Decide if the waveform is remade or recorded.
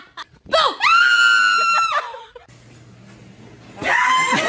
recorded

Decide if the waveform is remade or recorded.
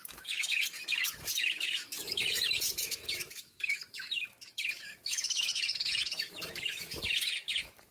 remade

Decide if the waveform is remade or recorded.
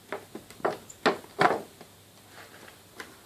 recorded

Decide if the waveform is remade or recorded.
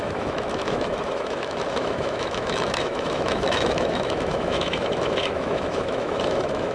remade